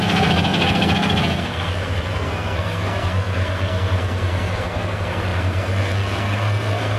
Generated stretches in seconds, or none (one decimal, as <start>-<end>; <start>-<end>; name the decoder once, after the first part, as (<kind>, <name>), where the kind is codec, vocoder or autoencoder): 0.0-7.0 (codec, SNAC)